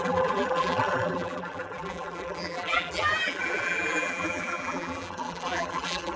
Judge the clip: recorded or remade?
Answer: remade